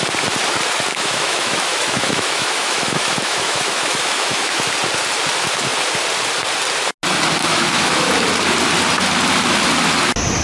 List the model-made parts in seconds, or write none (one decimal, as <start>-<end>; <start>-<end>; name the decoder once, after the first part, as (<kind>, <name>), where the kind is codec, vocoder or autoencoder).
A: 0.9-4.7 (autoencoder, DAC-VAE); 7.4-8.1